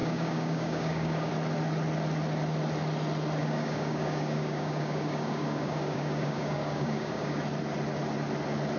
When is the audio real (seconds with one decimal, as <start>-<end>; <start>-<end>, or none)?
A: 1.3-3.4; 7.4-8.8